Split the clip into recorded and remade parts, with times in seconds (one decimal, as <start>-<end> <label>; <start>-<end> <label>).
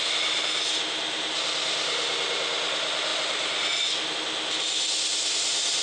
0.0-5.8 recorded